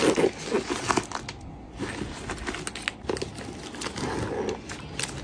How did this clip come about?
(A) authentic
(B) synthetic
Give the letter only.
A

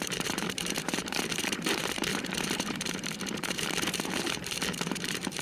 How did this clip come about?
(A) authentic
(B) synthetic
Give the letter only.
B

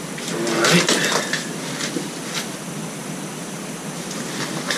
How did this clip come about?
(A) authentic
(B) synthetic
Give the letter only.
A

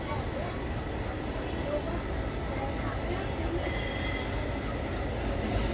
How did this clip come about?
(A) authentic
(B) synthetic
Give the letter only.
A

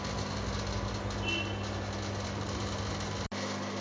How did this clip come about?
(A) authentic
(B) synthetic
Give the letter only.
A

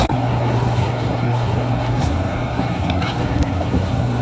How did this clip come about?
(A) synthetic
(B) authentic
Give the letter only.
A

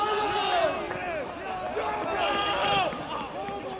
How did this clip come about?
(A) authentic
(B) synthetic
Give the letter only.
A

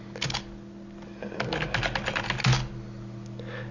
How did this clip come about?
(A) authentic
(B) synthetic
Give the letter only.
A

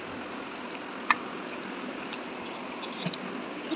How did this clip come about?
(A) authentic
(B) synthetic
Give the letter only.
A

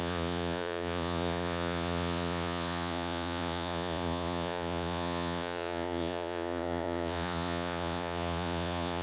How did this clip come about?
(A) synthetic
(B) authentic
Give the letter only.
A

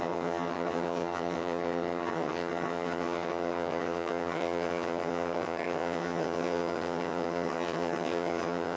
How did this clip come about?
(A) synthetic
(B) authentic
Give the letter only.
A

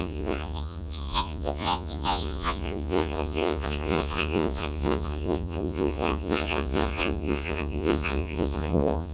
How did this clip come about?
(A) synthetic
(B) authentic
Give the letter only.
A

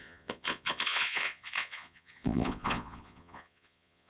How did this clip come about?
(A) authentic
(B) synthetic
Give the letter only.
B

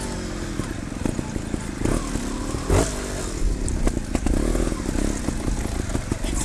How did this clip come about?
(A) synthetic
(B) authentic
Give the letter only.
B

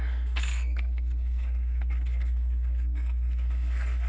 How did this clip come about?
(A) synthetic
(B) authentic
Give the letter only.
A